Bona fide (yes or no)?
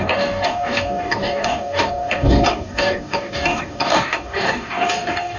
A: no